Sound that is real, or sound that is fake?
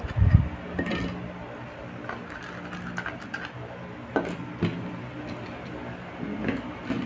real